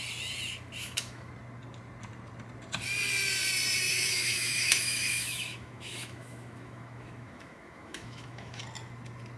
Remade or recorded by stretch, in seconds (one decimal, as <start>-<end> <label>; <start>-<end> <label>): 0.0-0.8 recorded; 0.8-1.3 remade; 1.3-3.9 recorded; 3.9-8.6 remade; 8.6-9.4 recorded

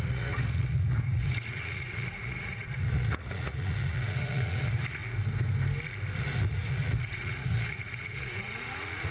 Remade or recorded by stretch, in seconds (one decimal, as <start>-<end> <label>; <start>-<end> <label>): 0.0-5.0 remade; 5.0-6.2 recorded; 6.2-9.1 remade

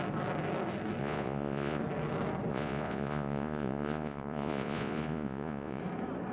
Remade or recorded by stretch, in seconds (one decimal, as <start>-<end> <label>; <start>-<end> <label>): 0.0-1.0 recorded; 1.0-1.8 remade; 1.8-2.5 recorded; 2.5-5.8 remade; 5.8-6.3 recorded

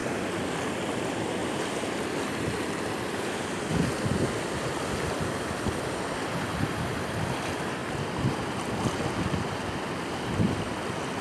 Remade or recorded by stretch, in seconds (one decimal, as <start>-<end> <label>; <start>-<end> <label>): 0.0-11.2 recorded

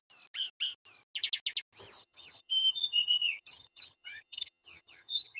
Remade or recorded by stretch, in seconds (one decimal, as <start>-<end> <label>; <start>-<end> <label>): 0.0-2.0 recorded; 2.0-5.4 remade

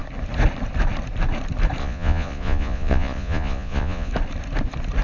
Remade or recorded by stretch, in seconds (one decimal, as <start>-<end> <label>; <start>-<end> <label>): 0.0-1.8 recorded; 1.8-4.1 remade; 4.1-5.0 recorded

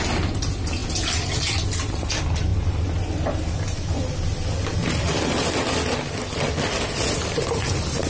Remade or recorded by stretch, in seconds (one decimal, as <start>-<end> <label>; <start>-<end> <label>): 0.0-8.1 recorded

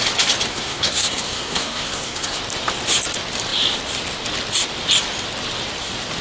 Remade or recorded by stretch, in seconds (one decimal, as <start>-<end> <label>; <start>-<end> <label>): 0.0-0.5 recorded; 0.5-2.4 remade; 2.4-6.2 recorded